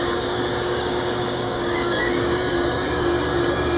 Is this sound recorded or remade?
remade